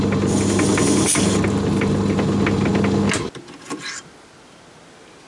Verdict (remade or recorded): recorded